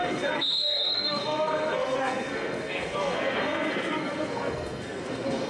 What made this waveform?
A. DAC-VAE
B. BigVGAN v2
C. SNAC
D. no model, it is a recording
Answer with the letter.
C